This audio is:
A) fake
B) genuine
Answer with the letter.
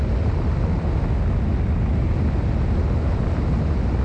B